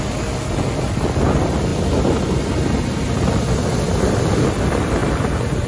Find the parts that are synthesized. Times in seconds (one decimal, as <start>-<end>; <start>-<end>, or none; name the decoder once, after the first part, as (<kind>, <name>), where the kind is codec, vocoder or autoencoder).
none